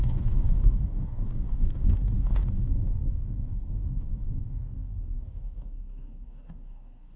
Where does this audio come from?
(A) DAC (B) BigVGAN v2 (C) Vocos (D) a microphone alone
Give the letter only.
A